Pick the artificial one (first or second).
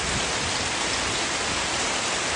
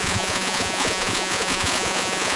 second